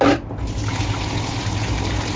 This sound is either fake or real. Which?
real